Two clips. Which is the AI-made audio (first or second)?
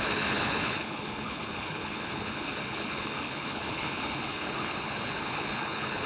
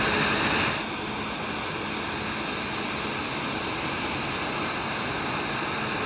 first